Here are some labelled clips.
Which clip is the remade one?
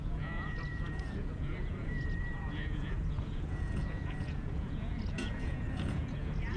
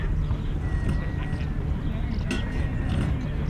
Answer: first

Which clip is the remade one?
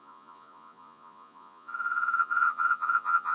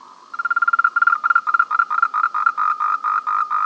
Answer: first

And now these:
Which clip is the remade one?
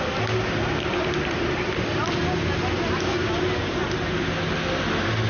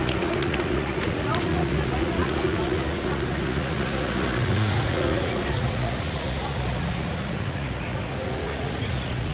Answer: second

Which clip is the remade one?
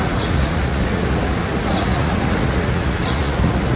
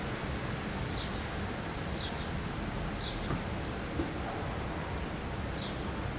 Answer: first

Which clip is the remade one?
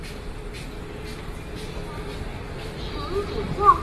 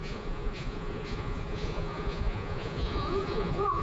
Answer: second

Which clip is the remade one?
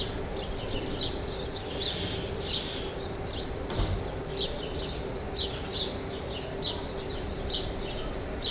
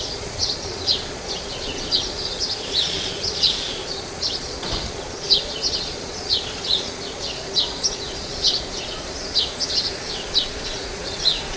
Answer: second